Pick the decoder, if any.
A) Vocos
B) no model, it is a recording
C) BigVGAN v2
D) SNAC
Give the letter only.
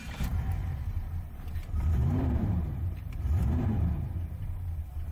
C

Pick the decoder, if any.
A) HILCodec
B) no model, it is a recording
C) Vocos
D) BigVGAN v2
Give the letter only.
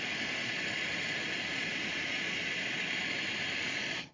D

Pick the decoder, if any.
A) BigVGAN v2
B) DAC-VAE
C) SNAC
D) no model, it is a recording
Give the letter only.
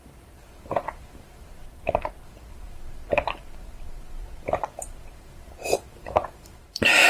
A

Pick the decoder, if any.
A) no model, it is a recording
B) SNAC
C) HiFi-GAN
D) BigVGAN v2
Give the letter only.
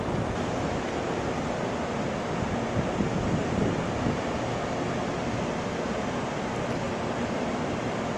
A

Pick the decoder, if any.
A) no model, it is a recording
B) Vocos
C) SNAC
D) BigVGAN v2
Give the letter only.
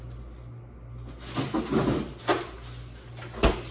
A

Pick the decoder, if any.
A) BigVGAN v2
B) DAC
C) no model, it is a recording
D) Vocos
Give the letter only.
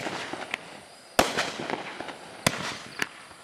C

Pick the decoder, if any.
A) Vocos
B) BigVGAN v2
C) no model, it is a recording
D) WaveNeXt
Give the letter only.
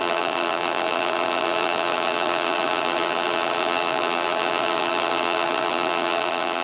B